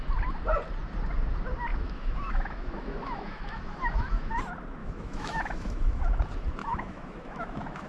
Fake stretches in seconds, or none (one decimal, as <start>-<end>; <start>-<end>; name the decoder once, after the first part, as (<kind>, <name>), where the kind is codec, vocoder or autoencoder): 1.7-4.3 (autoencoder, DAC-VAE); 4.8-6.0; 6.6-7.9